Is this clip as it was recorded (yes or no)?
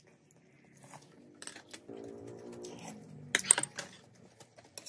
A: yes